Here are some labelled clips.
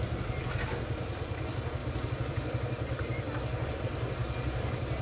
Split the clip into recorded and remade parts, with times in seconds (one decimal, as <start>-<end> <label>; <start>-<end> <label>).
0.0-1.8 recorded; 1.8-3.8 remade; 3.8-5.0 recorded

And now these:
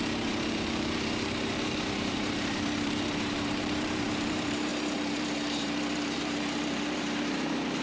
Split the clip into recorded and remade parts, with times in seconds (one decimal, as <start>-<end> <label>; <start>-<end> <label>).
0.0-7.8 remade

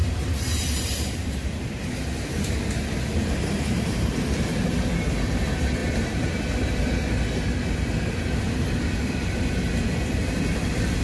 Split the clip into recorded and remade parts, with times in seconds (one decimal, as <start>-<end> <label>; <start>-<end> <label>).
0.0-2.5 remade; 2.5-3.2 recorded; 3.2-4.7 remade; 4.7-11.0 recorded

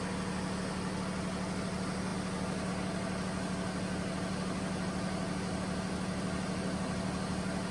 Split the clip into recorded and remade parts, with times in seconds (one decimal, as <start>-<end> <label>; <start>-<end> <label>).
0.0-7.7 recorded

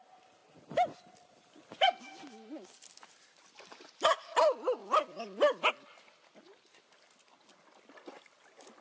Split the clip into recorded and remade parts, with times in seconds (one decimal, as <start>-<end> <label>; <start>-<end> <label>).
0.0-3.1 recorded; 3.1-4.3 remade; 4.3-8.8 recorded